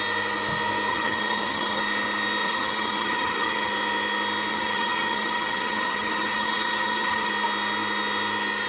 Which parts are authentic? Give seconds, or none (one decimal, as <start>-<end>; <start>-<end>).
0.0-0.9; 1.8-2.4; 3.7-4.5; 7.3-8.7